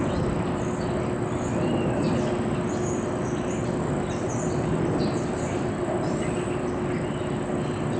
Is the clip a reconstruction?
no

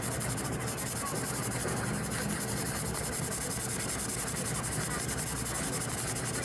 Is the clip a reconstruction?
no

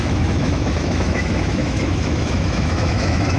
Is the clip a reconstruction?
yes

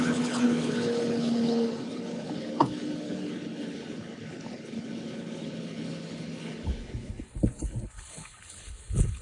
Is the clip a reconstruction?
yes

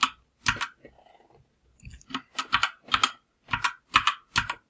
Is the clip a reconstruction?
no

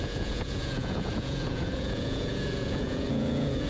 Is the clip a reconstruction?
yes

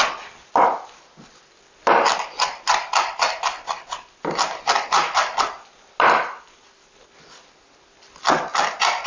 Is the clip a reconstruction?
no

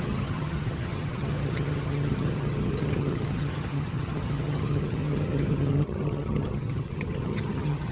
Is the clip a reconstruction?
yes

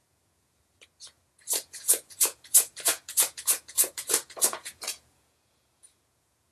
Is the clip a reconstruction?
yes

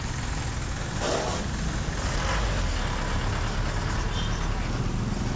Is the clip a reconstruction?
no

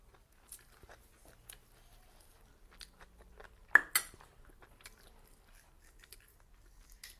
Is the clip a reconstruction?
no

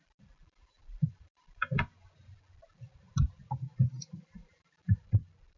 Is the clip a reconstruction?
yes